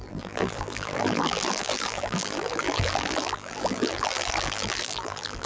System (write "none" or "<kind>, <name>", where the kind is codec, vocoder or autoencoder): vocoder, BigVGAN v2